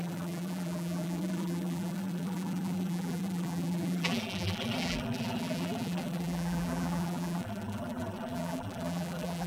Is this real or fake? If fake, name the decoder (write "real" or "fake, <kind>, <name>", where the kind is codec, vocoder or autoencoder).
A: fake, vocoder, BigVGAN v2